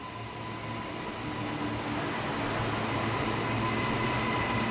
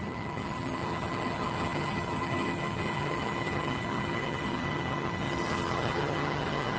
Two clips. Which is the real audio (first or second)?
first